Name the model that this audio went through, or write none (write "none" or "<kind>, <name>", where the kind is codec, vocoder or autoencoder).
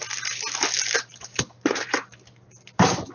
none